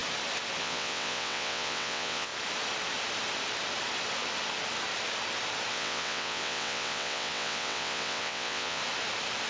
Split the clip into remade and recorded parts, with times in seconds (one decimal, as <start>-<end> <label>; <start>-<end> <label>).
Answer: 0.0-0.6 recorded; 0.6-2.3 remade; 2.3-5.7 recorded; 5.7-8.8 remade; 8.8-9.5 recorded